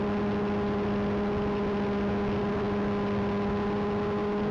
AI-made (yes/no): no